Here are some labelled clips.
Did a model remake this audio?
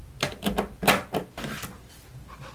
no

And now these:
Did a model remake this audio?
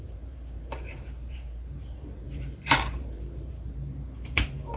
yes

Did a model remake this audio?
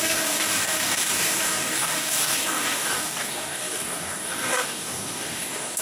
yes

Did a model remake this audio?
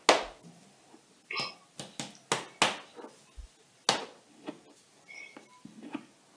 no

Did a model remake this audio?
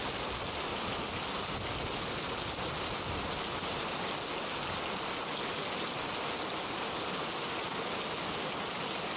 no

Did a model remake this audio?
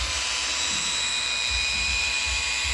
yes